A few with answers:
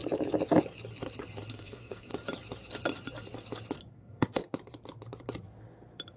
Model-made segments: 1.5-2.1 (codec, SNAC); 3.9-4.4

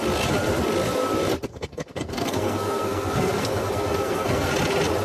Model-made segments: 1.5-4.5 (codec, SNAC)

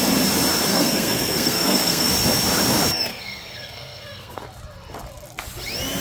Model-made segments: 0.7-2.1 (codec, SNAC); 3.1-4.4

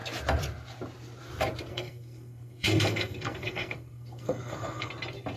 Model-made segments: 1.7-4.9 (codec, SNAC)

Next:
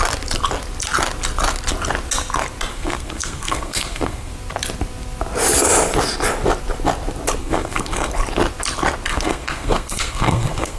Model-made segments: 2.7-4.3 (codec, SNAC); 7.4-8.1; 9.1-10.8